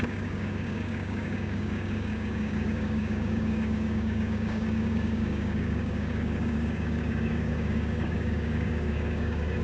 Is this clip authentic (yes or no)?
no